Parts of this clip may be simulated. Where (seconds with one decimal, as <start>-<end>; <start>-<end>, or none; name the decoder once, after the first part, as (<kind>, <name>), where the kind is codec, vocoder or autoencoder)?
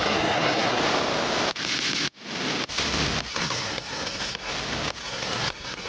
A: 0.0-0.8 (codec, SNAC); 3.3-4.5; 5.0-5.9